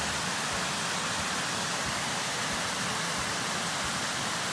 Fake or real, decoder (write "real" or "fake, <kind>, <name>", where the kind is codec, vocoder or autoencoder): real